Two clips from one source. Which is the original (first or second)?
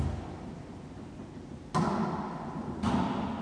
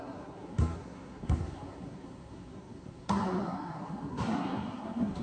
first